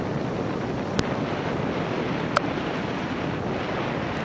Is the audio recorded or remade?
recorded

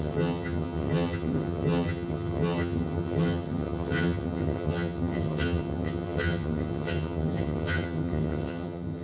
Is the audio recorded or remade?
remade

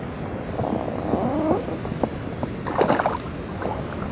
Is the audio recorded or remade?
recorded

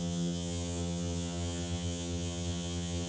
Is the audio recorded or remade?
remade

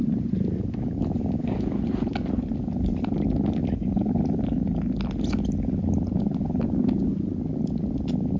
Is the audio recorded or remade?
recorded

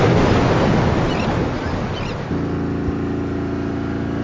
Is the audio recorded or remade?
recorded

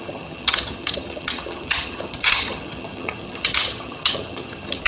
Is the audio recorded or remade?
remade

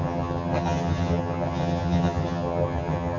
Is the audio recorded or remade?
remade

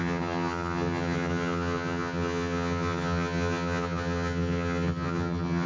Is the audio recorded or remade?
remade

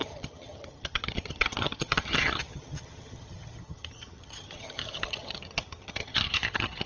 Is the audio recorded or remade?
remade